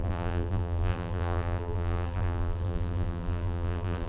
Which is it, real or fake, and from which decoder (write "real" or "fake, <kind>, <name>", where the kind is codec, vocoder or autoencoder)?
fake, vocoder, BigVGAN v2